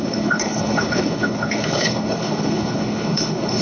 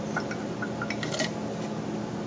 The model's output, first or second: first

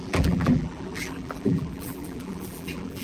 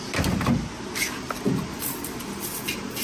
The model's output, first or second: first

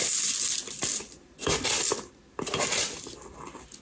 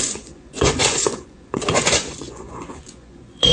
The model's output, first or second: second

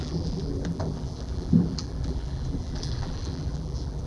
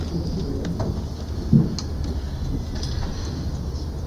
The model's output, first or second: first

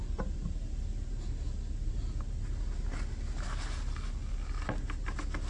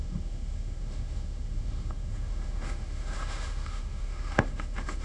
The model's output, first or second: second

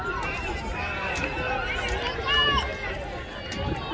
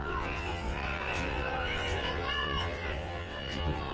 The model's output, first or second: second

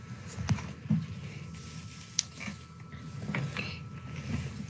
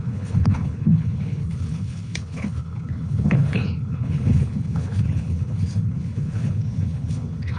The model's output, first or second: second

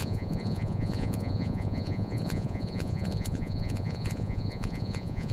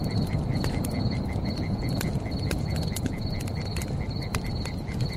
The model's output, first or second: first